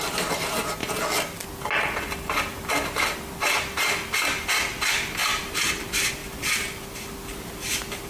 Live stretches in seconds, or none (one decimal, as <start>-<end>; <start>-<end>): 0.0-8.1